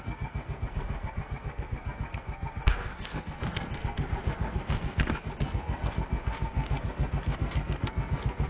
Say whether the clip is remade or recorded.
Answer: remade